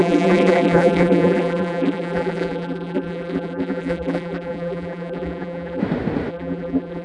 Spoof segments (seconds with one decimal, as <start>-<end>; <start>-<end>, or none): 0.0-5.8; 6.3-7.0